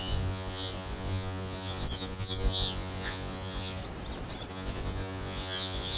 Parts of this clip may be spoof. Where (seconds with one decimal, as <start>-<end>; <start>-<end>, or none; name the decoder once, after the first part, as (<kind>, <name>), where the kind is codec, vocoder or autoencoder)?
0.0-3.8 (vocoder, Vocos); 4.5-6.0